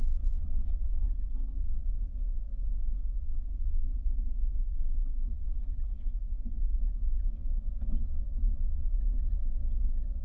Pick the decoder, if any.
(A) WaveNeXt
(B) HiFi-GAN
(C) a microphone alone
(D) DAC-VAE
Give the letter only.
A